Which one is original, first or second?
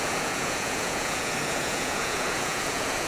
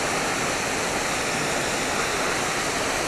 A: second